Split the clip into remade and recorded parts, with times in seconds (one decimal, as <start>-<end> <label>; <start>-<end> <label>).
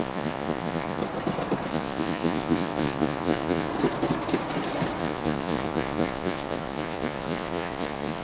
0.0-1.0 remade; 1.0-1.7 recorded; 1.7-3.7 remade; 3.7-5.0 recorded; 5.0-8.2 remade